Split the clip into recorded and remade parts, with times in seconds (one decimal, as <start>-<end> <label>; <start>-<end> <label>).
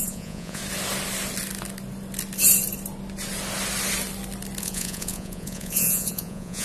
0.0-0.6 remade; 0.6-4.6 recorded; 4.6-6.6 remade